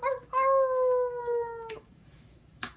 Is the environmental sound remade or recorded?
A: remade